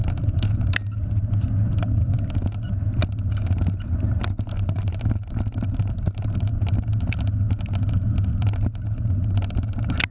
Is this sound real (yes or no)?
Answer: yes